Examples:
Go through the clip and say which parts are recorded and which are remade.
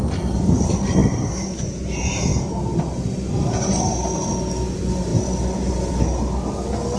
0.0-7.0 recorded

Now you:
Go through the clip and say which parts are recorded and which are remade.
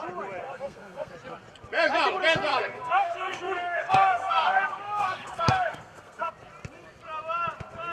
0.0-0.4 recorded; 0.4-1.1 remade; 1.1-2.5 recorded; 2.5-6.3 remade; 6.3-7.9 recorded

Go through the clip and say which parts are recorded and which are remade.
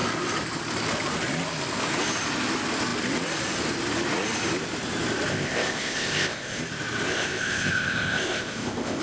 0.0-5.3 recorded; 5.3-6.6 remade; 6.6-7.1 recorded; 7.1-9.0 remade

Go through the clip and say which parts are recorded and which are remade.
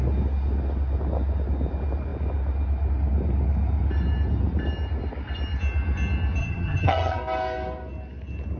0.0-6.4 recorded; 6.4-7.2 remade; 7.2-8.6 recorded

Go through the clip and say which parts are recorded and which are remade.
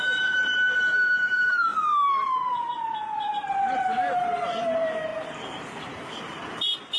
0.0-7.0 remade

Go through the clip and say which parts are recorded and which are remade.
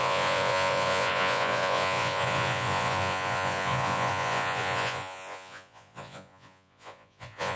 0.0-7.6 remade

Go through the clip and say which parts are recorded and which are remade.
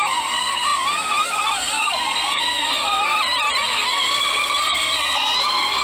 0.0-3.1 remade; 3.1-3.6 recorded; 3.6-5.8 remade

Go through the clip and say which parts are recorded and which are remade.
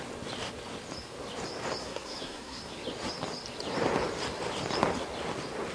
0.0-1.8 recorded; 1.8-2.6 remade; 2.6-5.7 recorded